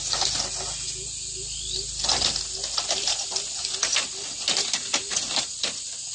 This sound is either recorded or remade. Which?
recorded